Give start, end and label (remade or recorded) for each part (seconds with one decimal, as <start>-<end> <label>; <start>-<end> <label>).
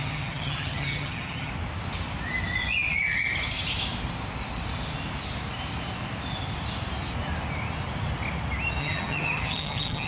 0.0-1.5 remade; 1.5-8.8 recorded; 8.8-10.1 remade